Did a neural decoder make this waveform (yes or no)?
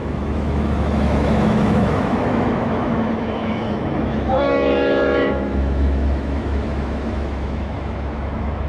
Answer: yes